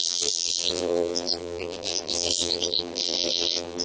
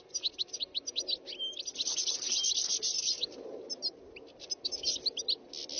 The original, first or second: second